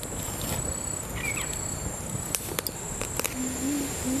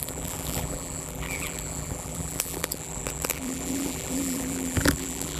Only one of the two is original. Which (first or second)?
first